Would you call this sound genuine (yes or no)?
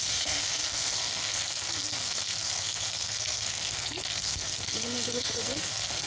no